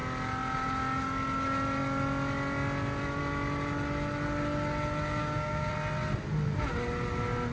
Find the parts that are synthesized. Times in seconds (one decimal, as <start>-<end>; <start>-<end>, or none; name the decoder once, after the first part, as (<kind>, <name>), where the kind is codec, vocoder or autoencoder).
5.2-5.7 (codec, DAC)